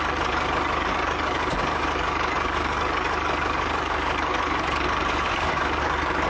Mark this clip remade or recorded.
remade